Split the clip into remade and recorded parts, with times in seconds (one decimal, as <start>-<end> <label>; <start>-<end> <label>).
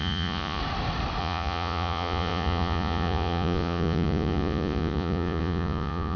0.0-0.6 remade; 0.6-1.2 recorded; 1.2-6.2 remade